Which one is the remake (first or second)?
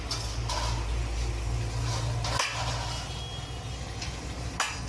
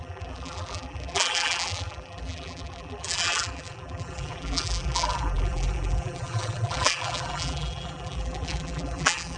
second